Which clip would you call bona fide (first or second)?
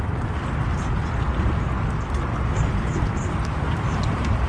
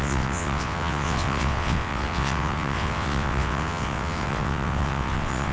first